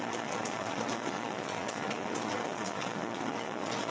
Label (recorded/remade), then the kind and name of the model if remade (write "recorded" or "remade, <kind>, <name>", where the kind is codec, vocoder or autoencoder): remade, vocoder, Vocos